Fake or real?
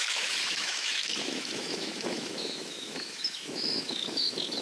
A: fake